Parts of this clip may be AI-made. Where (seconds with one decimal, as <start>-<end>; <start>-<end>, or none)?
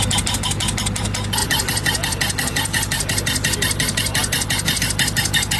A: none